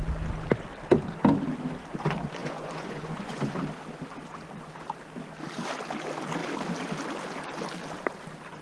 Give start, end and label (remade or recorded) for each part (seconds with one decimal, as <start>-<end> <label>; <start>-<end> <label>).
0.0-2.4 recorded; 2.4-3.5 remade; 3.5-8.6 recorded